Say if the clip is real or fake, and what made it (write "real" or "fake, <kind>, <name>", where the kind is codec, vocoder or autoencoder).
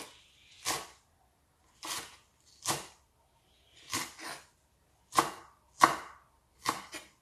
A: real